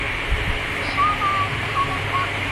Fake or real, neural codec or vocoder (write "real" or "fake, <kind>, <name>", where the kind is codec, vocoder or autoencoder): fake, vocoder, BigVGAN v2